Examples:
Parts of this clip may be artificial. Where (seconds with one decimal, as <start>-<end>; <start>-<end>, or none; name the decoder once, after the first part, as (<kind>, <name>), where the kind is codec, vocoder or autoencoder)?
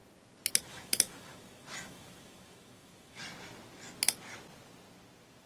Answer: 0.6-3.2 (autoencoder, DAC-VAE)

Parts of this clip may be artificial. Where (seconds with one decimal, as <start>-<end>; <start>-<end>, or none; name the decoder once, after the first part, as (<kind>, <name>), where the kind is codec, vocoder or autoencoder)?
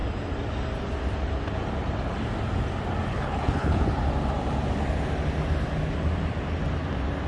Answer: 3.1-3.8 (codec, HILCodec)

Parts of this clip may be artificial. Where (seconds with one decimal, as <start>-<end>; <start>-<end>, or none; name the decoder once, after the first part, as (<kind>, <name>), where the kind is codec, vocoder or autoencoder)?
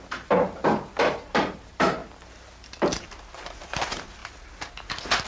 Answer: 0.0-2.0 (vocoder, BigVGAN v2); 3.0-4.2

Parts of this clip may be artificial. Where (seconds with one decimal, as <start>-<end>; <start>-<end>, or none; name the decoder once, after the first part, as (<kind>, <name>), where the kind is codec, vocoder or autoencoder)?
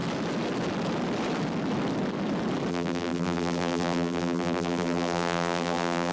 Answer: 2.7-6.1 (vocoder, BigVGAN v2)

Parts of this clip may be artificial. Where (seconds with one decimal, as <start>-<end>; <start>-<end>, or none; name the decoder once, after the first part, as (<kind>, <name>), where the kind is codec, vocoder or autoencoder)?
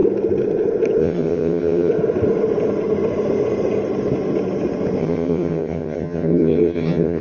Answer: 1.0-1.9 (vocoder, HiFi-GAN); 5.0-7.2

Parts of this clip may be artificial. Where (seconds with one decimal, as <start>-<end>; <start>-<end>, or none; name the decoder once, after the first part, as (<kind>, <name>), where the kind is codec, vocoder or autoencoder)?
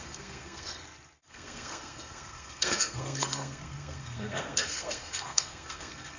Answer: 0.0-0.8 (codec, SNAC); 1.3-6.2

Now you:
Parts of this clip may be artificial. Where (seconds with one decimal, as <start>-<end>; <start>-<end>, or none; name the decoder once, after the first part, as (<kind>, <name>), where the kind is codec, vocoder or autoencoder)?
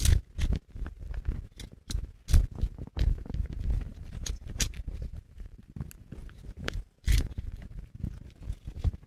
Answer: 3.9-5.6 (vocoder, BigVGAN v2); 6.2-7.8